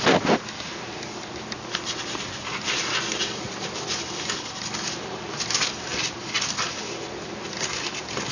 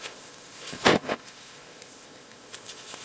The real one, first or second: first